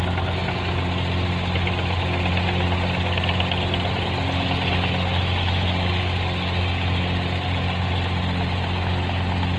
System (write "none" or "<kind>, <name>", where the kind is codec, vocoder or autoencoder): none